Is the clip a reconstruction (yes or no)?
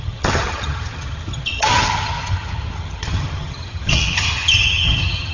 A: yes